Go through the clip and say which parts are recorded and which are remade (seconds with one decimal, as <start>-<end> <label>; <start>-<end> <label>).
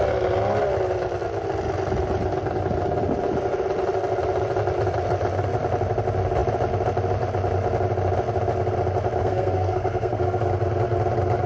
0.0-9.2 recorded; 9.2-10.4 remade; 10.4-11.5 recorded